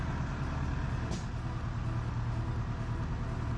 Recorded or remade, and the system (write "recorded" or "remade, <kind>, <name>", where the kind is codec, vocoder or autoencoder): recorded